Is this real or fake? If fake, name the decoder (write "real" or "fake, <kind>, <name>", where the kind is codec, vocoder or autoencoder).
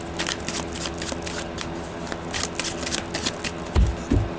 real